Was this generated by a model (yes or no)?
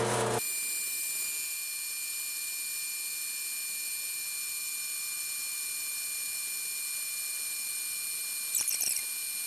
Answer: no